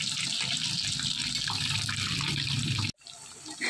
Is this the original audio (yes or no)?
yes